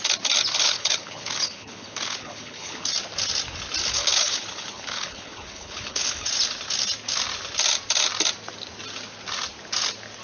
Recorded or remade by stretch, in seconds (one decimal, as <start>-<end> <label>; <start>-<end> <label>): 0.0-0.6 recorded; 0.6-2.9 remade; 2.9-3.8 recorded; 3.8-6.3 remade; 6.3-10.2 recorded